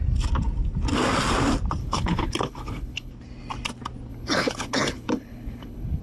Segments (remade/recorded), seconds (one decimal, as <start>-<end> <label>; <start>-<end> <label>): 0.0-1.8 recorded; 1.8-3.1 remade; 3.1-4.1 recorded; 4.1-6.0 remade